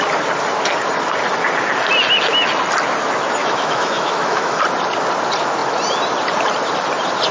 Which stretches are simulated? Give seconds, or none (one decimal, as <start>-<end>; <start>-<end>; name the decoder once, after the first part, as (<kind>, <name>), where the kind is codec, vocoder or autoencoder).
3.4-4.6 (autoencoder, DAC-VAE)